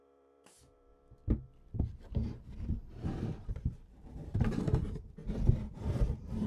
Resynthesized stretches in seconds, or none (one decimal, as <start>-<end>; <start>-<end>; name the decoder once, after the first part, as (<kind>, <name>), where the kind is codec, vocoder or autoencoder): 0.0-0.9 (vocoder, BigVGAN v2); 1.8-5.2; 5.7-6.5